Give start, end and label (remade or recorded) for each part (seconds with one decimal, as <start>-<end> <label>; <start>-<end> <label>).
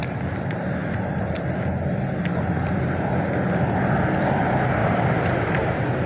0.0-4.8 recorded; 4.8-6.1 remade